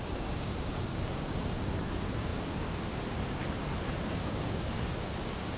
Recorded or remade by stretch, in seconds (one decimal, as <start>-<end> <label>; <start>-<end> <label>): 0.0-3.4 remade; 3.4-4.0 recorded; 4.0-5.6 remade